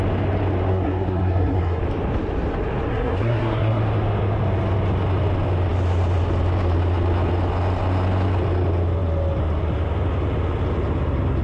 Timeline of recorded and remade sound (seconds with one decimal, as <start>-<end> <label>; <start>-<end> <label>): 0.0-0.7 recorded; 0.7-1.8 remade; 1.8-2.9 recorded; 2.9-3.8 remade; 3.8-11.4 recorded